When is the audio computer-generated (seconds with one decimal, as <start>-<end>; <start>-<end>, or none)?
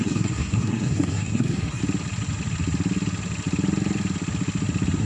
0.0-1.8